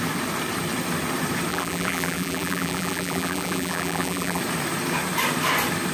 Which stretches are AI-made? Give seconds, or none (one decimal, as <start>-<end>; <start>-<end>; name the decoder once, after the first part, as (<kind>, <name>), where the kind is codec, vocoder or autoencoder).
1.5-4.4 (vocoder, BigVGAN v2)